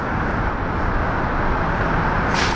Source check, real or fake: real